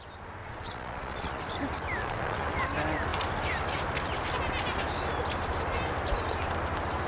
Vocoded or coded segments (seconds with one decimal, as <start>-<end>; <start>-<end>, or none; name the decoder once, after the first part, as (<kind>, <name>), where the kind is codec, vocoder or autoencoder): 0.4-1.4 (vocoder, Vocos); 2.0-2.5